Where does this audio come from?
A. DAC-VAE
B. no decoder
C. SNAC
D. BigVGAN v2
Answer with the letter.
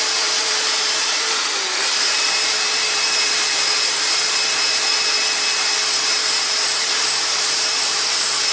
D